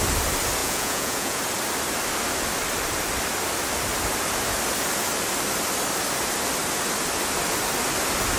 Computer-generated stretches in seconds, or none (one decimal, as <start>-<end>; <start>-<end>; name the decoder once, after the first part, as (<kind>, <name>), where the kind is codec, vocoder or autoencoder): 0.6-1.4 (vocoder, Vocos)